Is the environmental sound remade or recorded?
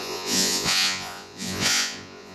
remade